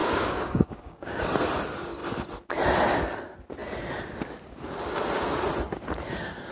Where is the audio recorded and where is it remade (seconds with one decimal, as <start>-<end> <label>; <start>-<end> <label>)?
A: 0.0-1.3 remade; 1.3-6.5 recorded